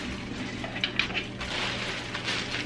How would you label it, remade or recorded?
recorded